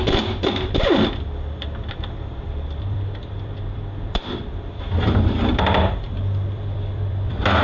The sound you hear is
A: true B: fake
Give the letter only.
B